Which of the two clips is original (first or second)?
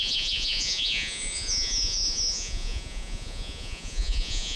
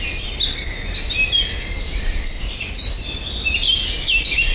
second